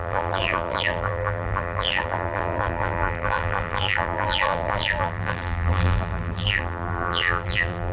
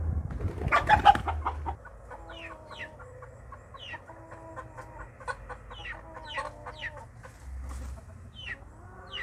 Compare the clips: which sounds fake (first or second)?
first